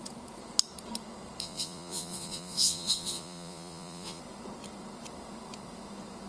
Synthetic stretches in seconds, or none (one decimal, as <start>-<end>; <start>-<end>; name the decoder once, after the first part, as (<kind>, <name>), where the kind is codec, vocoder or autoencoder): 1.4-4.2 (vocoder, Vocos)